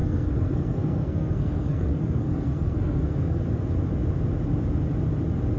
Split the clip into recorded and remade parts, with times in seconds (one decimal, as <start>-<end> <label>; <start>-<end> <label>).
0.0-3.4 remade; 3.4-5.6 recorded